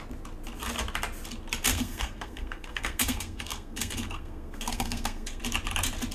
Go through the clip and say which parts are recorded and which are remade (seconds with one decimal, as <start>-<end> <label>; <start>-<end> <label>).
0.0-1.7 recorded; 1.7-5.4 remade; 5.4-6.1 recorded